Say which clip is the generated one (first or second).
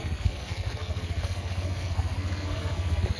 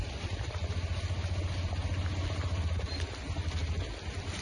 first